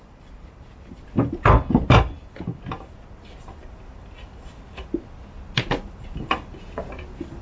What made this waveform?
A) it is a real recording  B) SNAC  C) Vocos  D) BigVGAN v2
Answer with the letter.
A